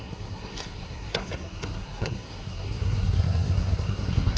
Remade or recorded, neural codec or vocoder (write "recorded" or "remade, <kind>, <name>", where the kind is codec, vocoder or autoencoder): remade, codec, SNAC